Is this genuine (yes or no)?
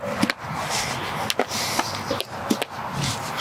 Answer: yes